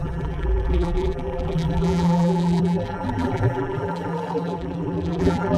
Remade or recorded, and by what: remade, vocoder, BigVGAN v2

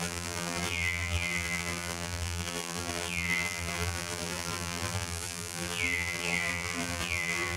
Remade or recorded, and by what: remade, vocoder, BigVGAN v2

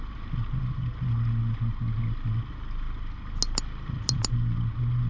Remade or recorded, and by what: recorded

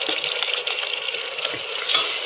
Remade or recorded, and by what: recorded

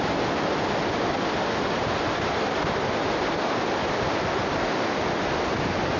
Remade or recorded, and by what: recorded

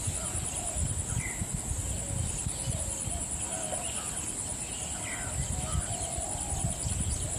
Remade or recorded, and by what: recorded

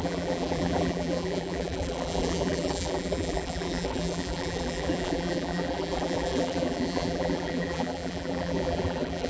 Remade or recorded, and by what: remade, vocoder, BigVGAN v2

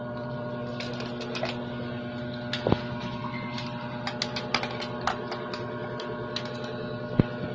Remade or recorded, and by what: recorded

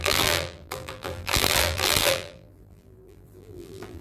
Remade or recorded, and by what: remade, vocoder, BigVGAN v2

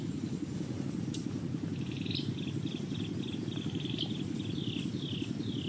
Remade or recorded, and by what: recorded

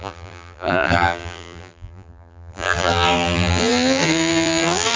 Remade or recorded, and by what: remade, vocoder, BigVGAN v2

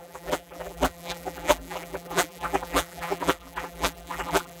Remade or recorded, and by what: remade, vocoder, BigVGAN v2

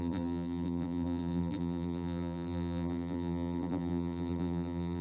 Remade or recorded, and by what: remade, vocoder, BigVGAN v2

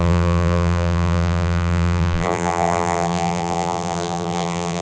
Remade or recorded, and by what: remade, vocoder, BigVGAN v2